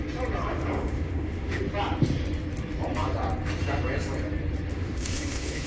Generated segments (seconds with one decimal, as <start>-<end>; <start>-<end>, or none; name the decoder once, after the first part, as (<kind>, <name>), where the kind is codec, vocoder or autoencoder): 0.5-1.6 (autoencoder, DAC-VAE); 4.7-5.7